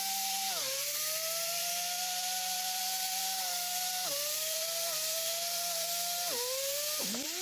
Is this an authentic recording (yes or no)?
no